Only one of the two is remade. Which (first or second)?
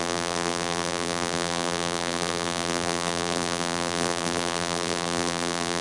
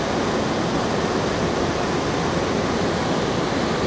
first